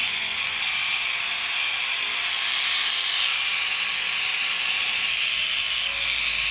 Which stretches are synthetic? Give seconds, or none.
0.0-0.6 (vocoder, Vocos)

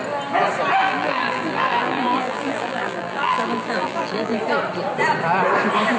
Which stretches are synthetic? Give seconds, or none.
0.8-4.4 (vocoder, BigVGAN v2)

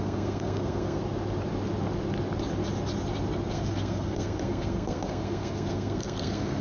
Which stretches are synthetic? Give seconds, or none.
0.0-1.0 (codec, SNAC); 3.5-6.6